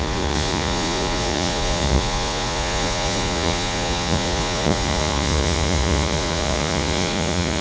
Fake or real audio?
fake